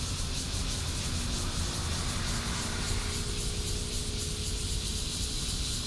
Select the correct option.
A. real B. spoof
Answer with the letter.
A